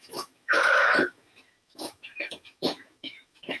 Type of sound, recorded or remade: remade